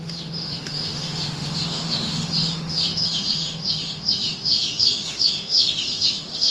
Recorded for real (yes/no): no